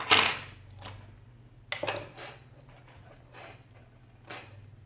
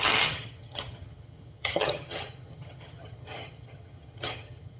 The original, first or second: first